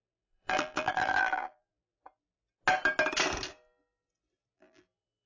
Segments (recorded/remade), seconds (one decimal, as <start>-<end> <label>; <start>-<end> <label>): 0.0-1.9 remade; 1.9-4.5 recorded; 4.5-5.3 remade